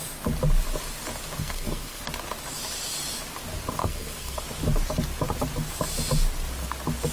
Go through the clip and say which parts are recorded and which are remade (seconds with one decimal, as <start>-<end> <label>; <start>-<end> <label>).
0.0-1.4 recorded; 1.4-2.0 remade; 2.0-3.8 recorded; 3.8-4.4 remade; 4.4-7.1 recorded